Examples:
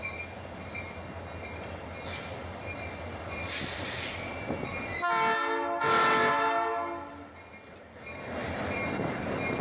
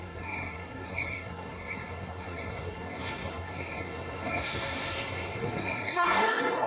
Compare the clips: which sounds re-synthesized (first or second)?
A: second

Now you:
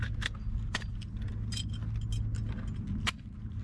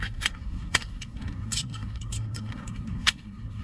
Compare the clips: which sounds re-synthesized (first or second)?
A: second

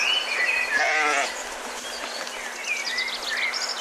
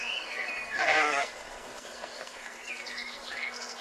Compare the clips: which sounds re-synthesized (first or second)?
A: second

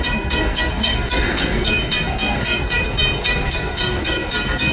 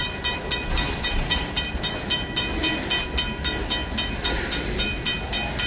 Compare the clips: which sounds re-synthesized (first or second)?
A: first